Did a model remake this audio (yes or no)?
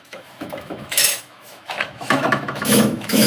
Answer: yes